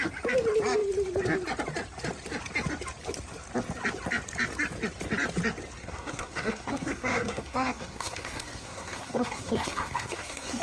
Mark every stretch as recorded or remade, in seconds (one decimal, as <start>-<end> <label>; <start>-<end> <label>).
0.0-5.8 recorded; 5.8-10.6 remade